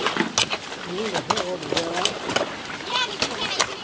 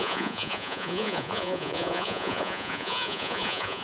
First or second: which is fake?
second